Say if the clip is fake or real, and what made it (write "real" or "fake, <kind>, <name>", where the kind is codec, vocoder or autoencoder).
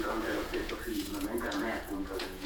fake, vocoder, Vocos